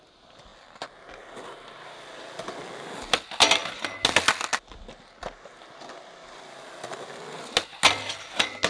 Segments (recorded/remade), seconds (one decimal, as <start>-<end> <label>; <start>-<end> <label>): 0.0-8.7 recorded